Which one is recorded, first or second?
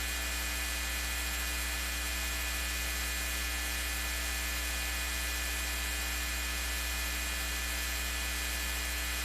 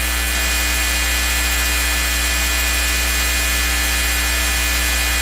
second